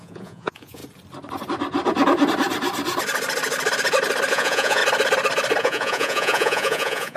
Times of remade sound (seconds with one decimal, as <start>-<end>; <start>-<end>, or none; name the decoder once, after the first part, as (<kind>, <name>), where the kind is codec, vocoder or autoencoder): 0.0-0.8 (vocoder, Vocos); 4.3-4.8; 5.6-7.2